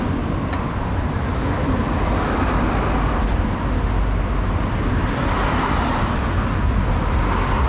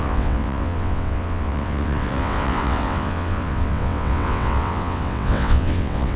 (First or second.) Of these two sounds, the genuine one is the first